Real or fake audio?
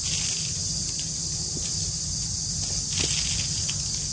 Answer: real